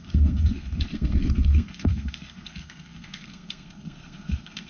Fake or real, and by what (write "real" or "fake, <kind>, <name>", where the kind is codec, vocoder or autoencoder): fake, codec, SNAC